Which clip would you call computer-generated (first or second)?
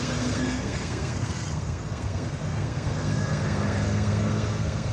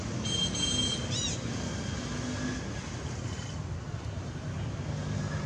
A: first